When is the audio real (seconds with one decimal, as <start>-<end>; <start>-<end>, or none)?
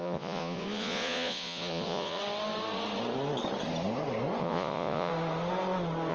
2.2-4.4; 5.1-6.1